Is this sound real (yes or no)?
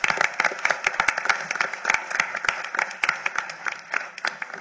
yes